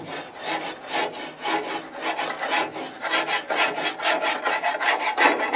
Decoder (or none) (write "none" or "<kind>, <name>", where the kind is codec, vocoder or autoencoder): none